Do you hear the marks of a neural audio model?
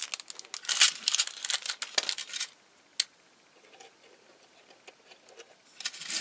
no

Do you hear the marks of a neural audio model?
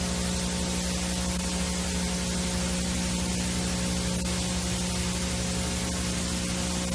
no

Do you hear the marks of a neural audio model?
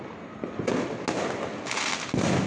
no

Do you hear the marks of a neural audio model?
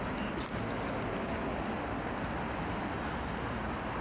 no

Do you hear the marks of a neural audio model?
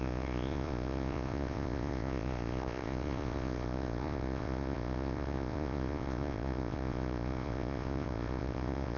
yes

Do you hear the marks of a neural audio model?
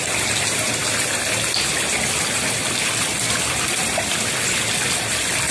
no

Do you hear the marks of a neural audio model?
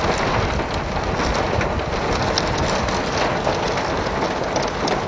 no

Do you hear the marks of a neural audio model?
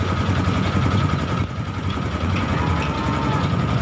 yes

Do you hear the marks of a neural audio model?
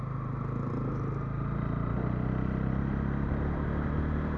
no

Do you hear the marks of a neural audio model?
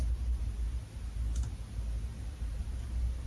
no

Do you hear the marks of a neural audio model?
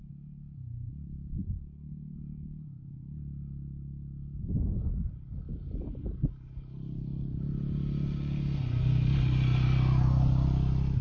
no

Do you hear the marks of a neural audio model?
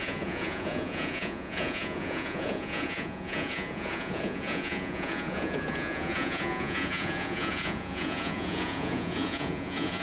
yes